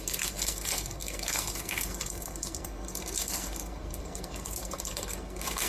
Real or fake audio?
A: fake